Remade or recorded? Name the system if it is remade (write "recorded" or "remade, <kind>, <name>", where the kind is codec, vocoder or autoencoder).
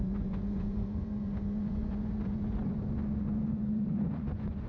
remade, vocoder, Vocos